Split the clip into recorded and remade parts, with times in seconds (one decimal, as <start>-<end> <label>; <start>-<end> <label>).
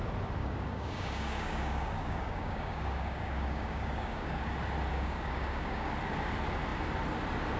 0.0-0.4 recorded; 0.4-4.5 remade; 4.5-4.9 recorded; 4.9-5.9 remade; 5.9-7.6 recorded